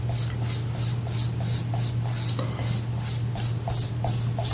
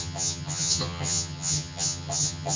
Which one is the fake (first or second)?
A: second